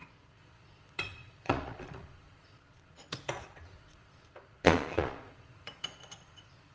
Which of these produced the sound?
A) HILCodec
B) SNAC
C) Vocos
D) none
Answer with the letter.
C